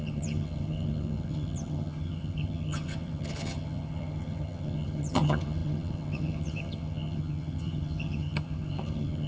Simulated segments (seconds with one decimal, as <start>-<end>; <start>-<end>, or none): 0.0-9.3